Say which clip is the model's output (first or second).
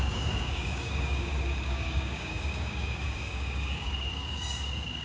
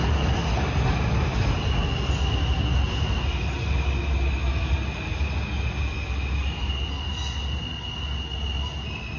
first